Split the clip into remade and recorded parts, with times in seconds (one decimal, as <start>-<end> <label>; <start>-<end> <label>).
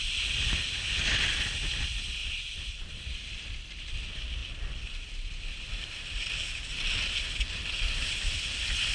0.0-8.9 recorded